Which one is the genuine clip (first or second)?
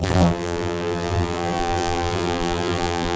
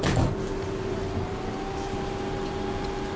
second